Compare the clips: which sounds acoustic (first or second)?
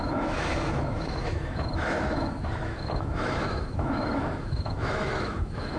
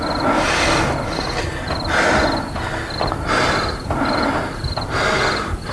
second